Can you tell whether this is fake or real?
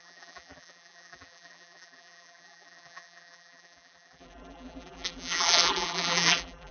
fake